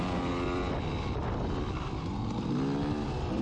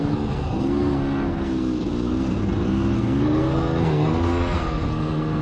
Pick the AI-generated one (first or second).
second